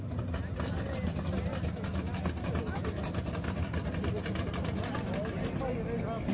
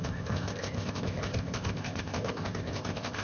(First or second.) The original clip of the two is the first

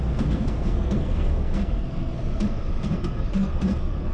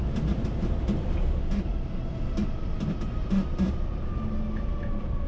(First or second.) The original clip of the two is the second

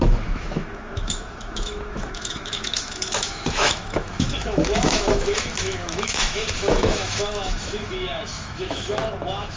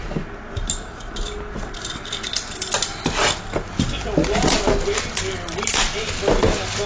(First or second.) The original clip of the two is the second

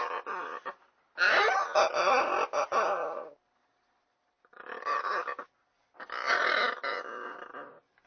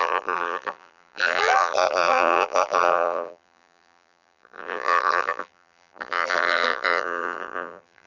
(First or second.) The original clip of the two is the first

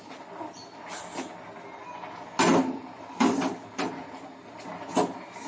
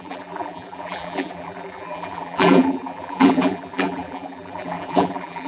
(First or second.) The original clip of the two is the first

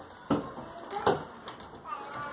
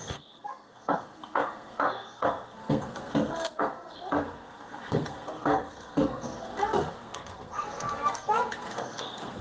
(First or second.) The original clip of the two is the first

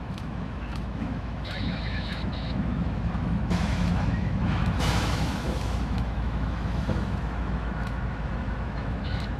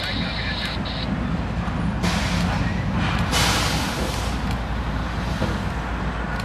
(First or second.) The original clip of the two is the second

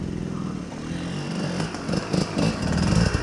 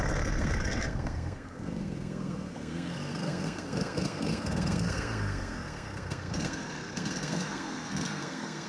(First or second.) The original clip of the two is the first